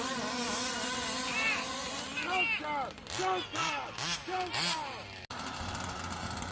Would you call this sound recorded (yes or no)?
yes